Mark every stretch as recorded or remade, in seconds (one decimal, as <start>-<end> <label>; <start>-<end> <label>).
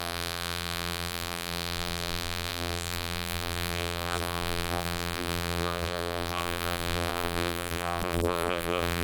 0.0-9.0 remade